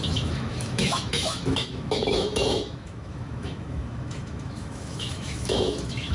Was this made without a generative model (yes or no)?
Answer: no